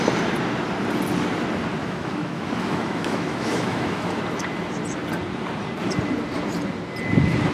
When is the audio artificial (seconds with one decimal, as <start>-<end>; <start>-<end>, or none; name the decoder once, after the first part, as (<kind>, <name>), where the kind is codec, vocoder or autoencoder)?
1.8-4.2 (autoencoder, DAC-VAE)